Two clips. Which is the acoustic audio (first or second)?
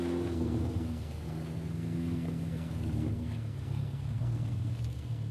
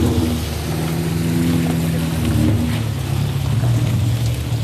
second